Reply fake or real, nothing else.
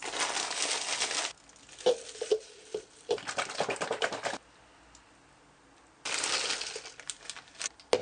real